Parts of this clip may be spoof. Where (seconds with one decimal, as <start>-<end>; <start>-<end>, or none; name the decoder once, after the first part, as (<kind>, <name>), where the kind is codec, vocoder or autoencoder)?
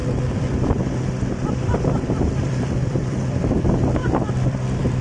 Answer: 1.7-3.4 (vocoder, BigVGAN v2); 4.0-5.0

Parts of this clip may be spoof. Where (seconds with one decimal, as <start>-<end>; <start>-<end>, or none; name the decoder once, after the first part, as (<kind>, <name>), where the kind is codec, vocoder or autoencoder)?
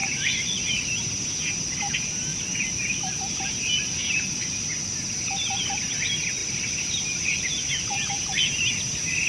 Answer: 0.0-0.8 (vocoder, BigVGAN v2); 2.3-3.2; 6.4-8.4